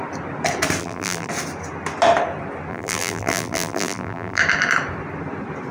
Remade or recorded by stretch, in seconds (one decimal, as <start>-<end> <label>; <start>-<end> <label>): 0.0-0.8 recorded; 0.8-1.3 remade; 1.3-2.7 recorded; 2.7-4.4 remade; 4.4-5.7 recorded